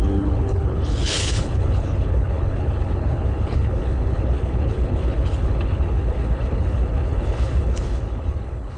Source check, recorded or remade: remade